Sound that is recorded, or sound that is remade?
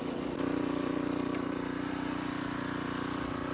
remade